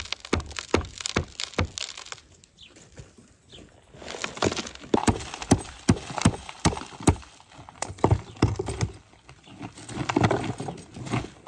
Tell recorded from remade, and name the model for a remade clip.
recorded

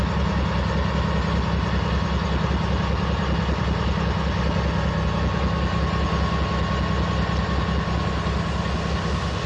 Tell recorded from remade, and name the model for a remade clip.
recorded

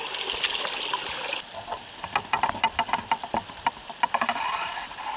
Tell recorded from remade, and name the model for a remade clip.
recorded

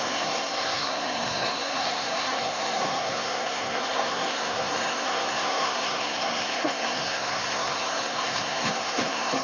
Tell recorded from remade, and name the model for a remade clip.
remade, codec, SNAC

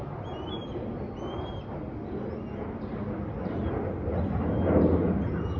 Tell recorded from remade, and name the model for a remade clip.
recorded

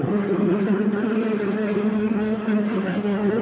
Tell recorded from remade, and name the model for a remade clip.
remade, codec, SNAC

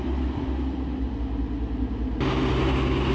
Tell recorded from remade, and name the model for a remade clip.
recorded